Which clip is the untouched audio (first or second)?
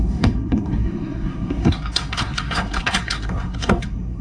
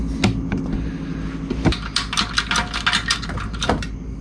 second